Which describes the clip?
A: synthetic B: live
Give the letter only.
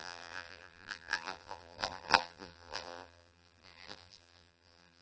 A